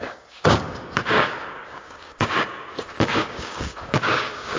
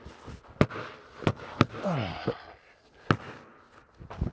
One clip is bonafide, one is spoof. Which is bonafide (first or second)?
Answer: second